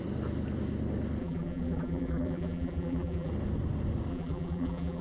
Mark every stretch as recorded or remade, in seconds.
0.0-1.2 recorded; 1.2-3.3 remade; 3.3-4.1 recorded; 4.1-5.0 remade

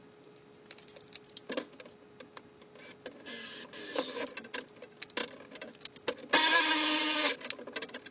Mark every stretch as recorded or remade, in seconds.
0.0-8.1 recorded